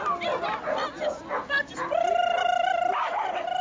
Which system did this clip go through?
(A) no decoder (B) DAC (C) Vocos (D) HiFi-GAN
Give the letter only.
A